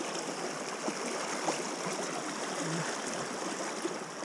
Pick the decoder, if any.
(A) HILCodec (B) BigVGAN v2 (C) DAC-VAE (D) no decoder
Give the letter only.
D